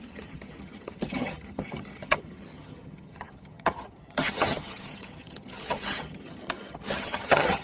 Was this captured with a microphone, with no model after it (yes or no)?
no